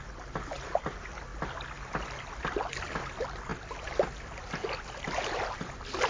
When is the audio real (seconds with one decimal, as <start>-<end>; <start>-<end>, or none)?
0.0-6.1